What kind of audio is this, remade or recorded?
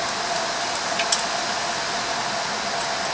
recorded